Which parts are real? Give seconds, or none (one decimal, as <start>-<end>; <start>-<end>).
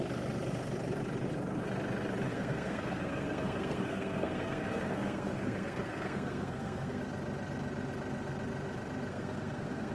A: 0.0-2.3; 7.0-9.1